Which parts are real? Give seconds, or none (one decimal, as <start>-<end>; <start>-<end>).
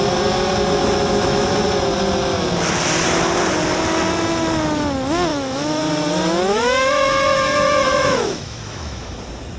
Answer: 0.0-0.8; 1.5-5.3; 5.8-6.5; 9.2-9.6